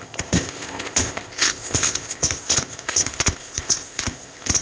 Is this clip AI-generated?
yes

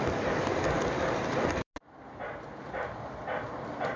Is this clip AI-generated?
no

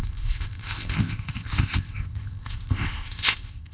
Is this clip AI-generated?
yes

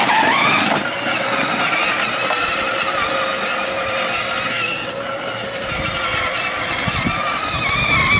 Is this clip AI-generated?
no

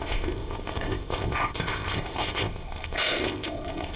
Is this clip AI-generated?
yes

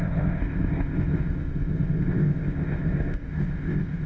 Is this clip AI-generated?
yes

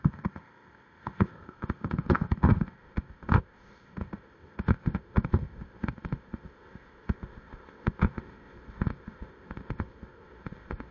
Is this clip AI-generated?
yes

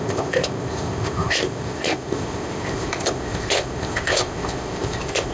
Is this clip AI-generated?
yes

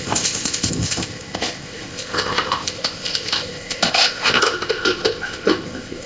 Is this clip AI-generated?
yes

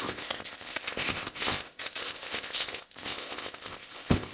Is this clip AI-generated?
yes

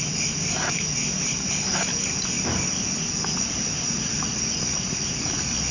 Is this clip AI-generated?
no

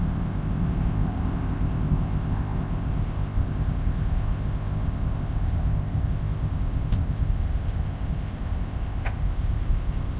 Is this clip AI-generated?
yes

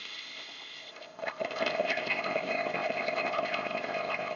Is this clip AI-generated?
yes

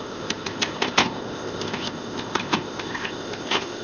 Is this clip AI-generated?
yes